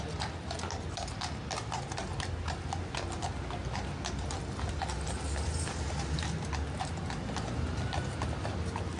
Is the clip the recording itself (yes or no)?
yes